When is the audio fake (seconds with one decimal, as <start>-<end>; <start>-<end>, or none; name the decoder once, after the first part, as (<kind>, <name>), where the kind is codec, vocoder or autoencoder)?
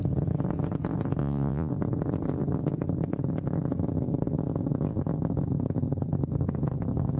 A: 1.2-1.7 (vocoder, Vocos)